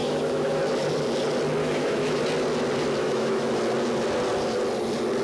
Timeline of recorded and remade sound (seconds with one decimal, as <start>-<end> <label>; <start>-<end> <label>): 0.0-0.6 remade; 0.6-1.6 recorded; 1.6-2.2 remade; 2.2-3.0 recorded; 3.0-3.6 remade; 3.6-5.2 recorded